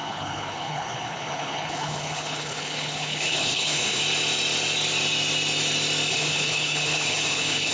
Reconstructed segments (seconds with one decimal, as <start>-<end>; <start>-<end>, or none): 0.0-4.0; 6.1-7.7